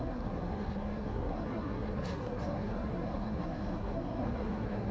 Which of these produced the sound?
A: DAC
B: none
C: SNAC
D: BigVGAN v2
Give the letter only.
C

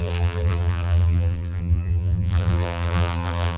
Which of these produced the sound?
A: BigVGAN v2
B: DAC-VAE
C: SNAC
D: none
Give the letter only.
A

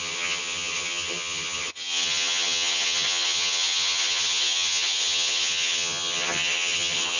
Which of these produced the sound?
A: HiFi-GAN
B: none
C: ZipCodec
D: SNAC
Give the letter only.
A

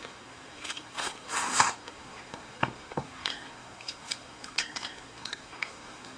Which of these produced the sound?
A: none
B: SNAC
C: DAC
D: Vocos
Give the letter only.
B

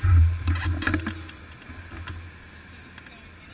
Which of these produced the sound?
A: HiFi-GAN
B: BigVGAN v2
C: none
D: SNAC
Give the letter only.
C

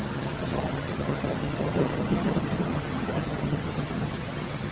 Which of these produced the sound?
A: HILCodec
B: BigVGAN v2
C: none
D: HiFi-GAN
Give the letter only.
D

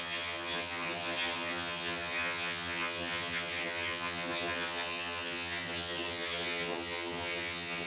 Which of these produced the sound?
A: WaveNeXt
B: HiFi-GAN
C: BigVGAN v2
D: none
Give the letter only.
B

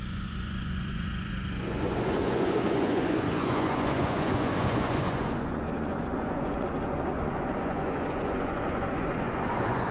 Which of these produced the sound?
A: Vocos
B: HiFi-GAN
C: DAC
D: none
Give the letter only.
A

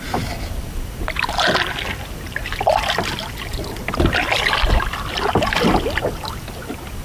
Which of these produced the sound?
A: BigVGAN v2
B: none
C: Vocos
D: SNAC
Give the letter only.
B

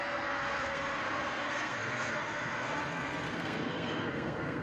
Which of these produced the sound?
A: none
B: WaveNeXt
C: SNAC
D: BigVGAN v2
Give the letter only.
C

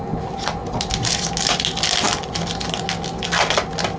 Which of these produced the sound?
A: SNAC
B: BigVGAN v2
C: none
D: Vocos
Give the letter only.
C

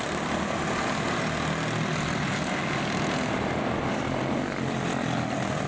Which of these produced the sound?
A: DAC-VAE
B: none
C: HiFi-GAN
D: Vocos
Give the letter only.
B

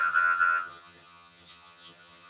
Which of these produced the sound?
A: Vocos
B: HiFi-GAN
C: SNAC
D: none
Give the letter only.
B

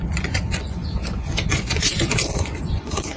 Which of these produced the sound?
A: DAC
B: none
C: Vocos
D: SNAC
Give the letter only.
C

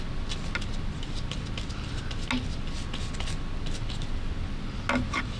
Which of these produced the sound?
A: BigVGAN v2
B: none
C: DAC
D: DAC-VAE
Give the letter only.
B